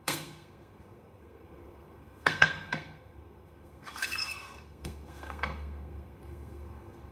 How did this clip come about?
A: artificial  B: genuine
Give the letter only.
A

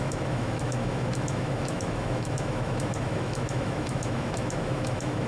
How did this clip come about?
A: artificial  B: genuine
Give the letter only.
A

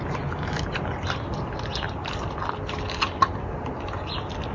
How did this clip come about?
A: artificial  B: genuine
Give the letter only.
B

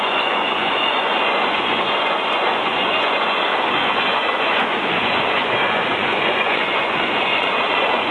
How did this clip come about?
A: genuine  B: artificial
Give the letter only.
B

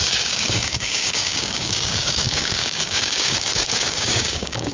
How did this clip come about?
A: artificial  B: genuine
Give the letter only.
A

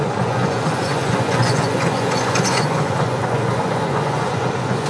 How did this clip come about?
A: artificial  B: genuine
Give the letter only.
A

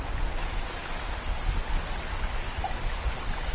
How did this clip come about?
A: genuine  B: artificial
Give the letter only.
A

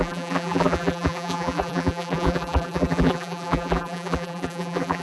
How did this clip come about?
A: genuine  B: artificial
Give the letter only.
B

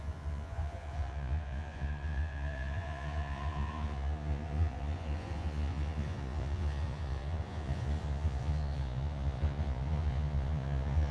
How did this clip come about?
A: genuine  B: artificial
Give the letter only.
B